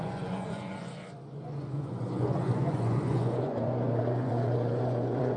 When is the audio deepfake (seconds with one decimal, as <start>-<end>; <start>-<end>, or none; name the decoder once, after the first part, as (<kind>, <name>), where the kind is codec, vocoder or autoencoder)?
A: 0.0-5.4 (vocoder, Vocos)